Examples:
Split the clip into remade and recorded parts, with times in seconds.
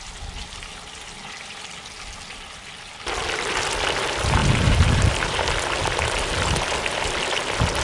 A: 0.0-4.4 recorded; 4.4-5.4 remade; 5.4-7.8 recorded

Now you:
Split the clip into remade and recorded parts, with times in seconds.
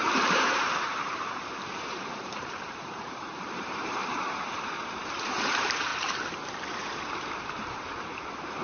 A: 0.0-5.9 remade; 5.9-7.3 recorded; 7.3-8.6 remade